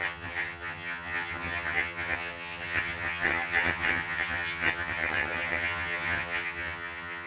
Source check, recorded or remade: remade